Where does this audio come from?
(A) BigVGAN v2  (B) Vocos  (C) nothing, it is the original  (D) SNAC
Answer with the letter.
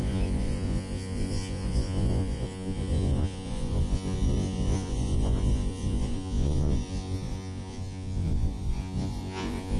B